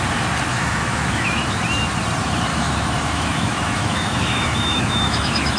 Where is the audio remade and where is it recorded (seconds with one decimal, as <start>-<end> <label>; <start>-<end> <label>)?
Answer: 0.0-0.5 recorded; 0.5-1.6 remade; 1.6-2.5 recorded; 2.5-5.6 remade

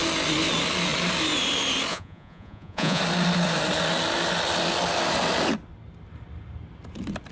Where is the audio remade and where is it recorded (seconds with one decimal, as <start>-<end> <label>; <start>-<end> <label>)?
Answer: 0.0-1.9 recorded; 1.9-3.0 remade; 3.0-7.3 recorded